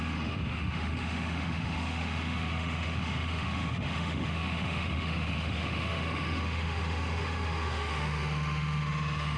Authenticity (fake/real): fake